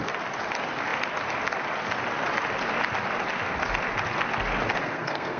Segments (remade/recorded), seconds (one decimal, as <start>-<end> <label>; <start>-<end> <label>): 0.0-4.8 recorded; 4.8-5.4 remade